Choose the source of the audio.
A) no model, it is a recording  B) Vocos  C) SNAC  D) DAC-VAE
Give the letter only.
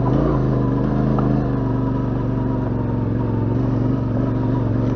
A